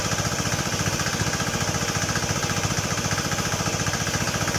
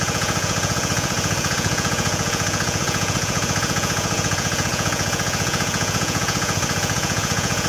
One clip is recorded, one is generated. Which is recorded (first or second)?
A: first